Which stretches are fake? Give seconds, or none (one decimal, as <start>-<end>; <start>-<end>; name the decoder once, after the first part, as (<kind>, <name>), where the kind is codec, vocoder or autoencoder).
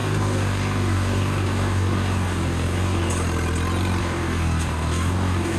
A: 0.0-3.1 (codec, DAC); 4.0-5.6